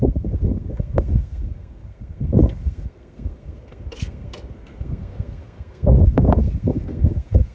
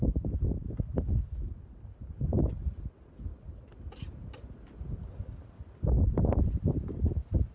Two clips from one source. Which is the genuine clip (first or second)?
second